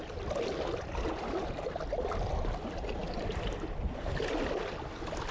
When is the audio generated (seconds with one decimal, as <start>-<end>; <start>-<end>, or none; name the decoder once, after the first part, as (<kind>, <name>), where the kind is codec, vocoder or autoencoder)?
none

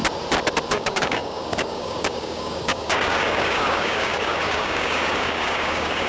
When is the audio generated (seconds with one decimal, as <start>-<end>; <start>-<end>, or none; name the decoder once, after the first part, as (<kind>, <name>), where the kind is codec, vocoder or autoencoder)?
0.7-6.1 (codec, DAC)

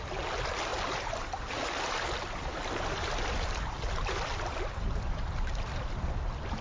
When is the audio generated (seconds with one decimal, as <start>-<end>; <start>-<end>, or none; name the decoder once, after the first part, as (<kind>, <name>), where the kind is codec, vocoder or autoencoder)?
none

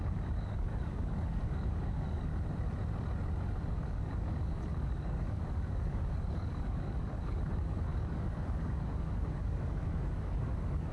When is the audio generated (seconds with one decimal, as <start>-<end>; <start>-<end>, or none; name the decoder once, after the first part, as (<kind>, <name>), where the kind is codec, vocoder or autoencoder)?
0.0-2.3 (codec, DAC); 3.7-10.9

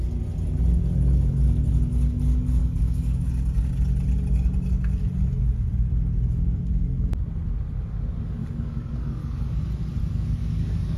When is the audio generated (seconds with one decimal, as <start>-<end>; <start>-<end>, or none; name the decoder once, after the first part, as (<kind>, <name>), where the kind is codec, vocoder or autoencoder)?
2.6-3.3 (codec, DAC); 8.4-9.6; 10.0-11.0

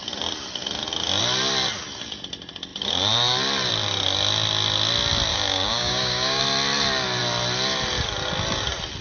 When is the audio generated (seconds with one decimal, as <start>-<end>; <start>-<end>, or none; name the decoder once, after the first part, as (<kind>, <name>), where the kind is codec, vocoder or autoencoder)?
5.3-6.4 (codec, DAC)